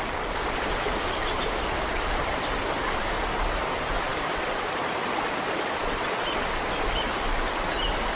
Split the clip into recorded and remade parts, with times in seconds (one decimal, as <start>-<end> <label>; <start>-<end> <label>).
0.0-4.1 recorded; 4.1-7.7 remade; 7.7-8.2 recorded